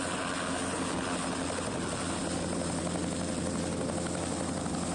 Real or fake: real